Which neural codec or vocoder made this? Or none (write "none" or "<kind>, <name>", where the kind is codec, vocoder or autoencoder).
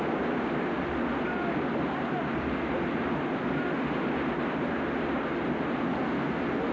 none